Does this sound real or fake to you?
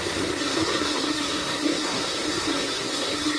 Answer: fake